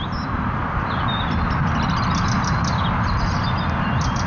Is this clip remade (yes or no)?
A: no